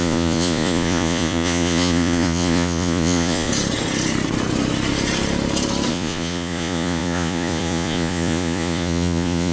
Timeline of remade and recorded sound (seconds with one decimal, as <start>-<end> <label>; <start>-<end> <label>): 0.0-3.5 remade; 3.5-5.9 recorded; 5.9-9.5 remade